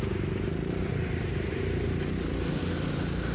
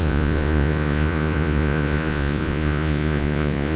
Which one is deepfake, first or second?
second